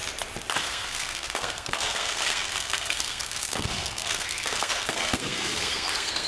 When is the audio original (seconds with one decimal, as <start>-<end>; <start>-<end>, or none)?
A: 0.0-0.6